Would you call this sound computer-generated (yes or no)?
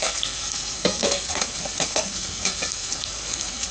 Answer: yes